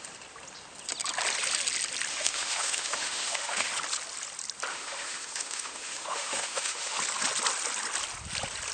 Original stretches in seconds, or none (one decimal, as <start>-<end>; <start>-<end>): 0.0-2.1; 3.7-4.7; 7.0-8.7

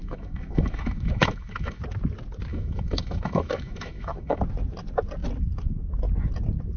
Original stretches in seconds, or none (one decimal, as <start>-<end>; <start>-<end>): 1.8-2.5; 4.4-6.8

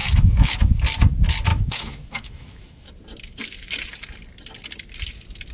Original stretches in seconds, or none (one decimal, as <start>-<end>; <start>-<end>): 0.7-1.5; 2.9-5.5